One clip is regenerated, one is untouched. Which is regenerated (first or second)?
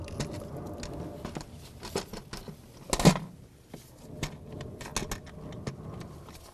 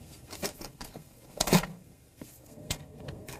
second